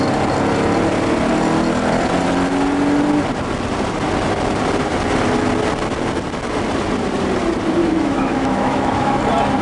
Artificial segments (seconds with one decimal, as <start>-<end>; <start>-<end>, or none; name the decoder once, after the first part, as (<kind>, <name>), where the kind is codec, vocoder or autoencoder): 7.8-9.2 (autoencoder, DAC-VAE)